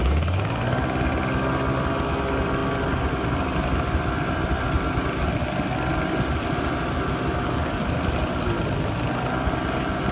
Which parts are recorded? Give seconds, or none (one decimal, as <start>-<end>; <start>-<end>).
0.5-10.1